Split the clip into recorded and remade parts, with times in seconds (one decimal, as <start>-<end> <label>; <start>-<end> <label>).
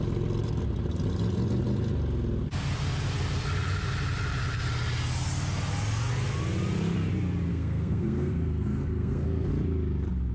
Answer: 0.0-7.5 recorded; 7.5-9.5 remade; 9.5-10.3 recorded